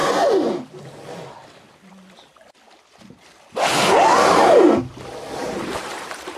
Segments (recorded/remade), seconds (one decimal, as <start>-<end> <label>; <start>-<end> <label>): 0.0-5.4 recorded; 5.4-6.4 remade